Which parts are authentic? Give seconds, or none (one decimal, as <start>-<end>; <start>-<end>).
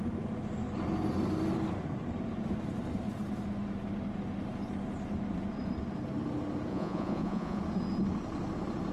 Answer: 0.0-6.7; 7.6-8.9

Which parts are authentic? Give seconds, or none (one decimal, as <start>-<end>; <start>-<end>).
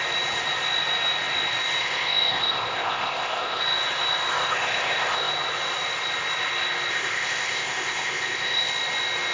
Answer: 0.0-1.8; 3.6-4.3; 5.3-6.9; 8.7-9.3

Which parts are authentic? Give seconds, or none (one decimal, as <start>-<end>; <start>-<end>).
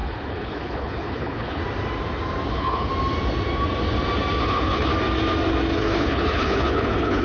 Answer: 1.6-2.5; 2.9-4.4; 4.9-5.8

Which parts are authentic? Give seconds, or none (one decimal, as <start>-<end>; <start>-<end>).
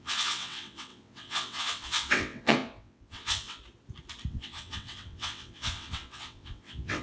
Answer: 3.6-4.3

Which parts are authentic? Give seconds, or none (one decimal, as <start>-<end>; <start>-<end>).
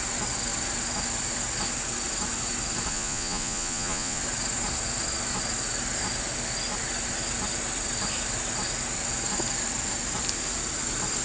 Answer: 0.0-2.9; 4.2-11.2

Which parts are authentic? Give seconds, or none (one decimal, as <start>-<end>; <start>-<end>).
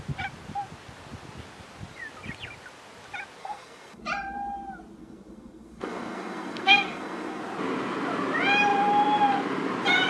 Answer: 0.0-3.4; 4.0-5.0; 7.4-10.1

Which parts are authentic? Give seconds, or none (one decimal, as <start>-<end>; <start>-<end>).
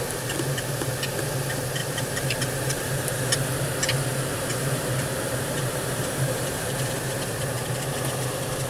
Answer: 0.0-1.8; 3.3-4.1; 7.7-8.7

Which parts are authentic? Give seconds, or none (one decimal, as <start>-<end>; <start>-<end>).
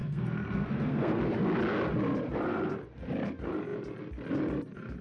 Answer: 1.2-5.0